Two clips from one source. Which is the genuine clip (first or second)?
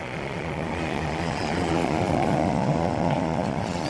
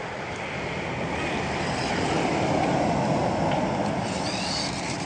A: second